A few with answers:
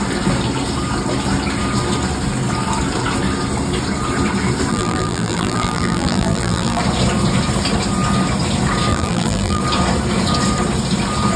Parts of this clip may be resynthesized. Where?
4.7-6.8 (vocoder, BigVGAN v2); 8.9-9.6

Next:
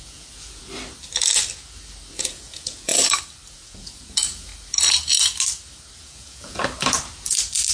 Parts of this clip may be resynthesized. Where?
0.0-0.6 (vocoder, Vocos); 2.1-2.9; 3.5-4.5; 6.0-6.6

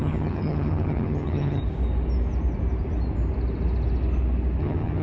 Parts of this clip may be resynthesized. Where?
0.0-1.6 (vocoder, HiFi-GAN); 4.6-5.0

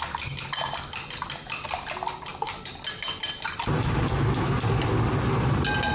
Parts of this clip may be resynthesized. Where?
none

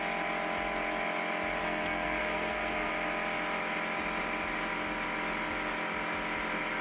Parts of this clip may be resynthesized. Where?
1.6-2.9 (codec, SNAC)

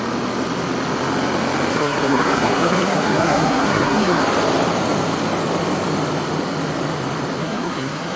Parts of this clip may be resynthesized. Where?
1.7-4.2 (codec, SNAC); 7.4-8.2

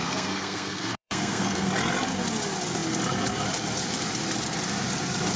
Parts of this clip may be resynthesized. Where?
0.0-1.7 (codec, SNAC)

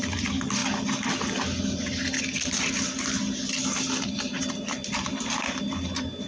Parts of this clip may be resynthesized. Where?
0.0-0.6 (vocoder, BigVGAN v2); 2.2-6.3